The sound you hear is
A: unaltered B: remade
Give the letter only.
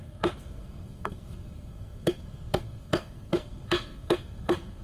B